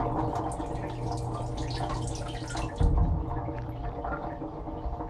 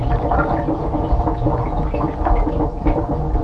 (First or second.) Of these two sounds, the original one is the first